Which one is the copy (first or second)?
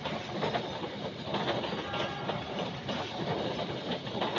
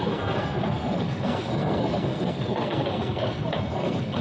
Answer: second